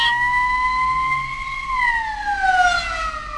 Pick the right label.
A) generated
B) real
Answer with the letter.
B